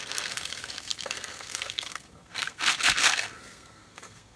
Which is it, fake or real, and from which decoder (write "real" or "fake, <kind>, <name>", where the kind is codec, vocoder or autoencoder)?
fake, codec, SNAC